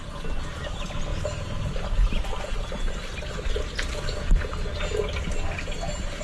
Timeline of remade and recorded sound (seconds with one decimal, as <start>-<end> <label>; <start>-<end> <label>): 0.0-6.2 recorded